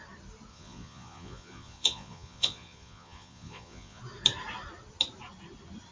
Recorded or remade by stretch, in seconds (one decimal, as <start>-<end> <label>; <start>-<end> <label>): 0.0-0.5 recorded; 0.5-4.0 remade; 4.0-5.9 recorded